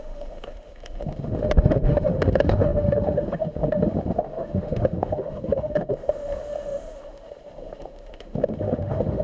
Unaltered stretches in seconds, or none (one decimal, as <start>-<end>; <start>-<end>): none